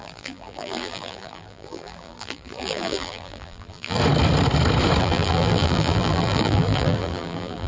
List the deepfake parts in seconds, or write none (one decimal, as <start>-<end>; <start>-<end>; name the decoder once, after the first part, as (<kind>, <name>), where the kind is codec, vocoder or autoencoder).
0.0-4.0 (vocoder, BigVGAN v2); 5.0-7.7